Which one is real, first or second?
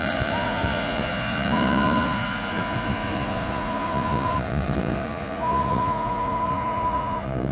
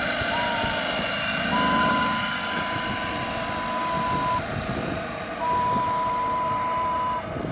second